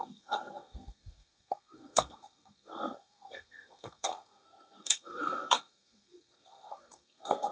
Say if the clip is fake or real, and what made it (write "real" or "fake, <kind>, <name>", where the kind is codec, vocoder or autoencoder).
fake, codec, SNAC